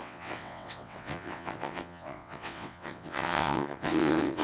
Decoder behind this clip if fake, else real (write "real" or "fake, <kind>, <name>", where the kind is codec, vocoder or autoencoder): fake, vocoder, WaveNeXt